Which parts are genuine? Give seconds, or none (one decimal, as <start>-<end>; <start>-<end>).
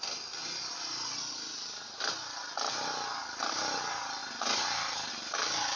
0.0-5.8